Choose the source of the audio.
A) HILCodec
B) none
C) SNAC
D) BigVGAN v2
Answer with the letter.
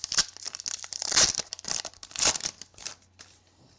B